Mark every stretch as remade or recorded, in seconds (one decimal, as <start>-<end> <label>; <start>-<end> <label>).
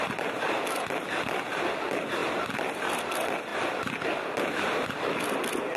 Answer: 0.0-5.8 recorded